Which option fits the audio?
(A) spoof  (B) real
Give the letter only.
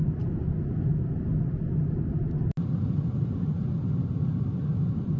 B